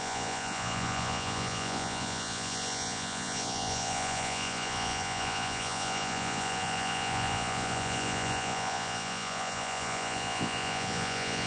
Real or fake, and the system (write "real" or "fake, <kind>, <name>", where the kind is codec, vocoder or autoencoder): fake, vocoder, Vocos